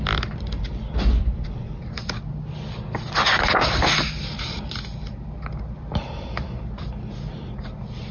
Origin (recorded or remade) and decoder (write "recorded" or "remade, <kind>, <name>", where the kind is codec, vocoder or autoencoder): recorded